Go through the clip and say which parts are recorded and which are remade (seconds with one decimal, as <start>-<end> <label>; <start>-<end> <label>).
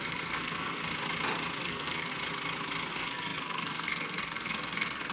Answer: 0.0-0.8 remade; 0.8-1.6 recorded; 1.6-2.1 remade; 2.1-2.9 recorded; 2.9-5.1 remade